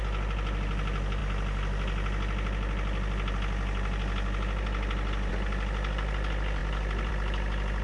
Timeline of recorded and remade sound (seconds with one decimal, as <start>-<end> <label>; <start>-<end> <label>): 0.0-7.8 recorded